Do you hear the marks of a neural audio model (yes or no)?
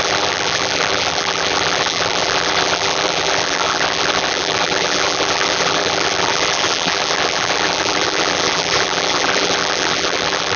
yes